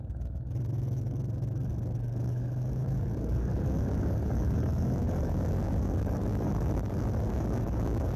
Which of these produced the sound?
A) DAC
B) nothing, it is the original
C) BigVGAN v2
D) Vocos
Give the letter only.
A